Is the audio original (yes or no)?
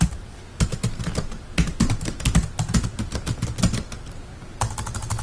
yes